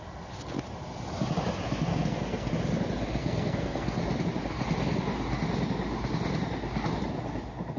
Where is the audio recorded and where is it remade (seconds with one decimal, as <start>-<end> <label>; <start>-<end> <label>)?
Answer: 0.0-1.9 recorded; 1.9-2.5 remade; 2.5-3.2 recorded; 3.2-4.0 remade; 4.0-7.8 recorded